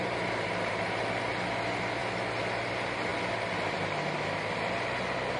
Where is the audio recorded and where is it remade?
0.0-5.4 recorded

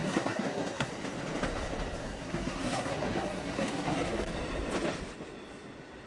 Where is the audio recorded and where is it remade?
0.0-0.9 remade; 0.9-2.0 recorded; 2.0-4.3 remade; 4.3-6.1 recorded

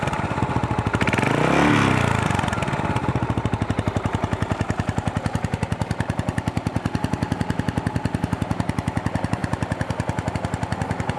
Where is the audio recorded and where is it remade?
0.0-11.2 recorded

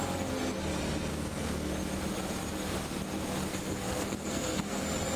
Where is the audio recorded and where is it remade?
0.0-1.1 recorded; 1.1-1.7 remade; 1.7-3.5 recorded; 3.5-4.8 remade; 4.8-5.2 recorded

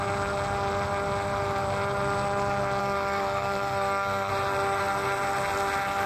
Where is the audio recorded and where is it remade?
0.0-2.8 recorded; 2.8-4.3 remade; 4.3-6.1 recorded

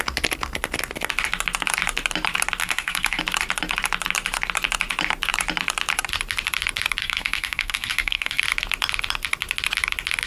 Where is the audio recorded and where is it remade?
0.0-2.6 recorded; 2.6-3.2 remade; 3.2-7.0 recorded; 7.0-8.4 remade; 8.4-10.3 recorded

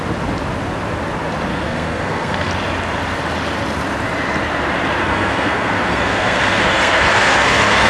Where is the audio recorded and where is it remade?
0.0-1.5 recorded; 1.5-2.5 remade; 2.5-5.0 recorded; 5.0-7.9 remade

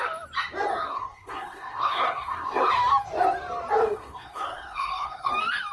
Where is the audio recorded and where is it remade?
0.0-0.7 recorded; 0.7-2.7 remade; 2.7-3.8 recorded; 3.8-5.3 remade; 5.3-5.7 recorded